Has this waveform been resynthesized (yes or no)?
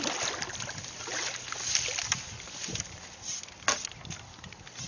no